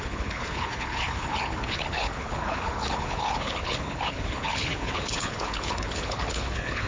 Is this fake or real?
fake